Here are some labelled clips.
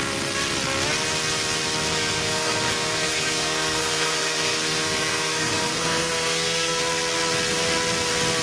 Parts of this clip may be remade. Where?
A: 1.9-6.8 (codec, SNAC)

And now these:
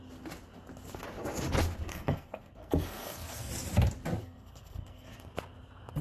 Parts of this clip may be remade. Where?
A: 1.9-3.5 (codec, SNAC); 4.2-5.3

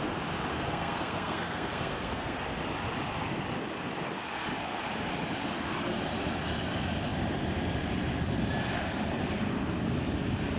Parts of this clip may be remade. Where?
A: 0.5-2.4 (codec, SNAC)

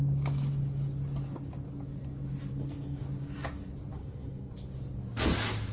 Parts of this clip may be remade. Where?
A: 2.5-3.0 (codec, SNAC); 4.0-4.5

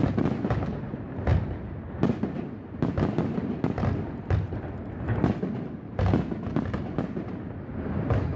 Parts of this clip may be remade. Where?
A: none

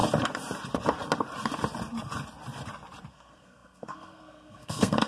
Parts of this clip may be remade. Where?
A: 3.1-5.1 (codec, SNAC)

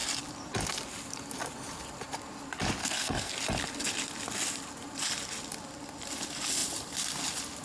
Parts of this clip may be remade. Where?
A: 2.8-3.3 (codec, SNAC)

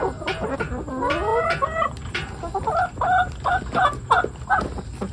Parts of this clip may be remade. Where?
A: none